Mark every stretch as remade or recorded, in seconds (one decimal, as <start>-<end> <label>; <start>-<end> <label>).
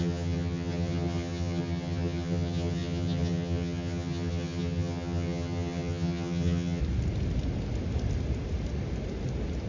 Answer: 0.0-6.8 remade; 6.8-9.7 recorded